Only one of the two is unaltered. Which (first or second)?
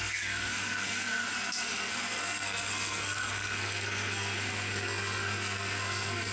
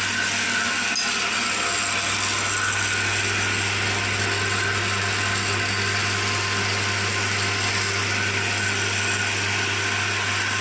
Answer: second